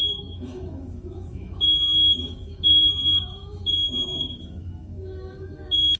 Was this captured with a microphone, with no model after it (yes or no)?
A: no